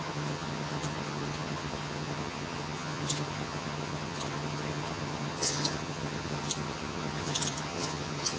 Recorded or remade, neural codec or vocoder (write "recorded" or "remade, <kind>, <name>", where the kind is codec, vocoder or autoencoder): remade, vocoder, HiFi-GAN